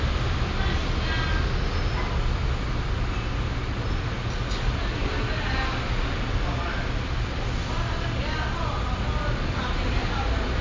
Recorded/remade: recorded